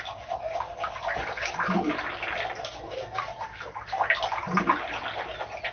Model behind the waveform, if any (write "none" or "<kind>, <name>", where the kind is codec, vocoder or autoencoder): none